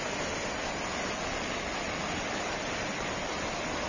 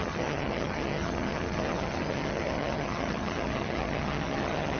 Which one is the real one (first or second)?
first